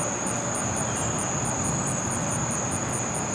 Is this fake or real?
real